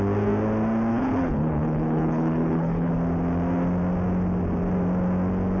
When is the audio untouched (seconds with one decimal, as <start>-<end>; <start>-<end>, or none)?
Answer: 0.0-0.9; 2.9-5.6